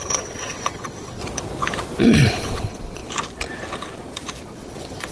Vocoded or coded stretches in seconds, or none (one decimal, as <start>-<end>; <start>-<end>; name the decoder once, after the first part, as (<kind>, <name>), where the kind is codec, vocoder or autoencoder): 0.0-1.2 (vocoder, WaveNeXt); 2.0-3.0; 4.4-5.1